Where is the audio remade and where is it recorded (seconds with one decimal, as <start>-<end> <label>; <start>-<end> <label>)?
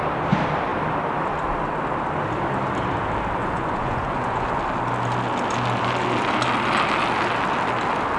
0.0-3.4 recorded; 3.4-4.5 remade; 4.5-8.2 recorded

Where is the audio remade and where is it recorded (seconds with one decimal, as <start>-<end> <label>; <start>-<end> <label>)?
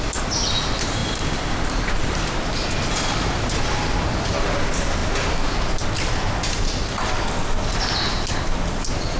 0.0-9.2 recorded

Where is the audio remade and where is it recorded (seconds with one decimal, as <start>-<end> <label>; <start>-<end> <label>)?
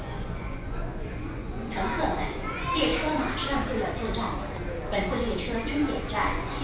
0.0-2.9 remade; 2.9-5.1 recorded; 5.1-6.6 remade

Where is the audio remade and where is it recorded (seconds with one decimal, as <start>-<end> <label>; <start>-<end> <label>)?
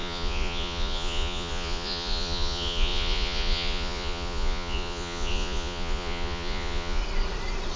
0.0-7.0 remade; 7.0-7.8 recorded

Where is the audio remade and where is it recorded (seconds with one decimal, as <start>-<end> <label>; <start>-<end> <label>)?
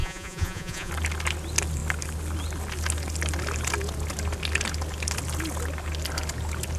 0.0-0.9 remade; 0.9-6.8 recorded